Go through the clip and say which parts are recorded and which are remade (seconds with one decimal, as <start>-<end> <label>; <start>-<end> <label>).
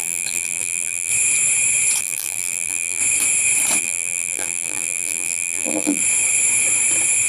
0.0-1.1 remade; 1.1-2.0 recorded; 2.0-3.0 remade; 3.0-3.8 recorded; 3.8-6.0 remade; 6.0-7.3 recorded